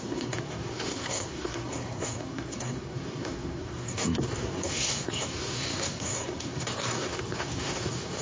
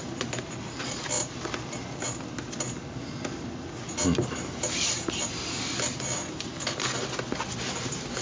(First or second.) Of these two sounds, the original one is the second